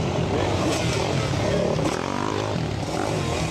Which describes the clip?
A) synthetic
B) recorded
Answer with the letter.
B